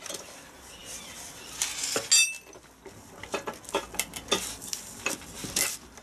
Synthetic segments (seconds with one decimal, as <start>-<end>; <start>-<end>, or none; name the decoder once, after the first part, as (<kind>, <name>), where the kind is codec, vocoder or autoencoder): none